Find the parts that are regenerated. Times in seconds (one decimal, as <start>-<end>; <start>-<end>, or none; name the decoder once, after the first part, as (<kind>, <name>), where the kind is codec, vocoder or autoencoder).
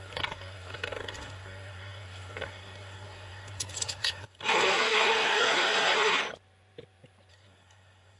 0.0-6.2 (codec, SNAC); 7.3-8.2